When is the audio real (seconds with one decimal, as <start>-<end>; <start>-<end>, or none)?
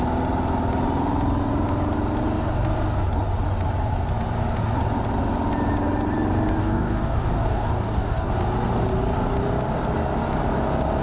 0.0-6.6; 8.3-11.0